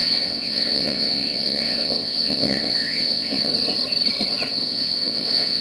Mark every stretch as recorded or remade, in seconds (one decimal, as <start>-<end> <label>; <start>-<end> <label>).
0.0-3.5 remade; 3.5-4.5 recorded; 4.5-5.6 remade